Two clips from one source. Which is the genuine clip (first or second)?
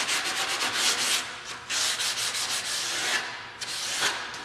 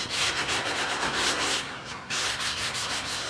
first